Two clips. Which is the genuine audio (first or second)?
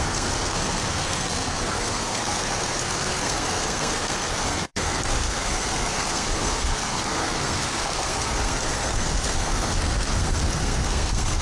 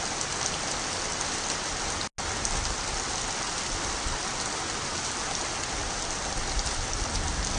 second